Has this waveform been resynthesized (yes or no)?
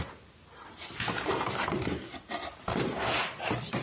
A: no